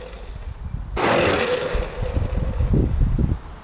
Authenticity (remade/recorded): recorded